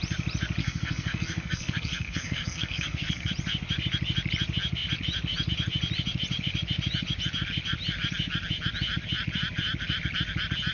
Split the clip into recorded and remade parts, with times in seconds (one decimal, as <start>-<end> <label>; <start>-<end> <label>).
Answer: 0.0-0.6 recorded; 0.6-3.3 remade; 3.3-10.7 recorded